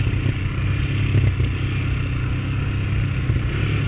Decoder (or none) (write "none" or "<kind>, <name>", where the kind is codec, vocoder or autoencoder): none